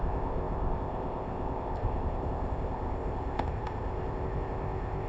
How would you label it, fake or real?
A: fake